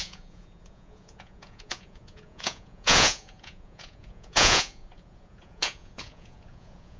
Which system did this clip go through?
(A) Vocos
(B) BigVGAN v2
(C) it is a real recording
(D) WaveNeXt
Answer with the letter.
A